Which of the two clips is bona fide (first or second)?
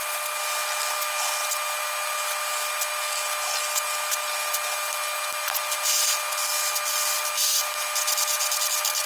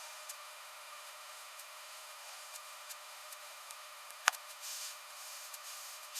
first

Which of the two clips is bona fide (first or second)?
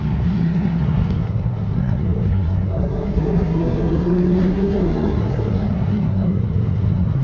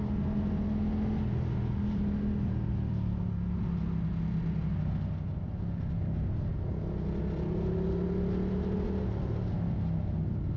second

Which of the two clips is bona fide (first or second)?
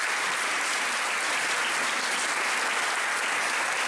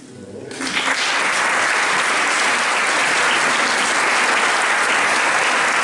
second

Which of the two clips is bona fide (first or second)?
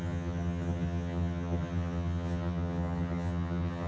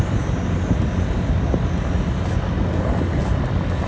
second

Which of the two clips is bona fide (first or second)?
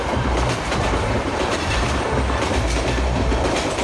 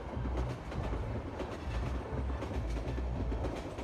second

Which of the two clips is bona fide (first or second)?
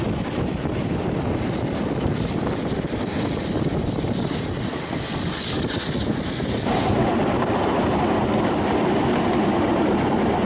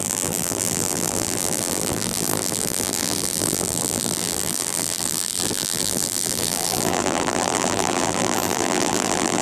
first